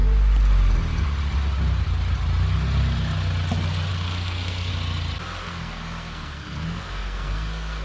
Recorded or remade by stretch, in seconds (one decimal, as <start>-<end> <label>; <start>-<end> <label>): 0.0-3.9 recorded; 3.9-4.7 remade; 4.7-5.4 recorded; 5.4-7.8 remade